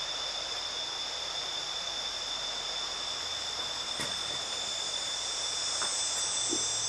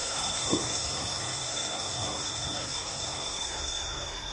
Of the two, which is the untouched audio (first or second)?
first